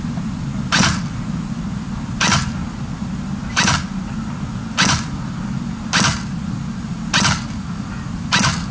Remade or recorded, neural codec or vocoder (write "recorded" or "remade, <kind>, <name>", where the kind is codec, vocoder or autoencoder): recorded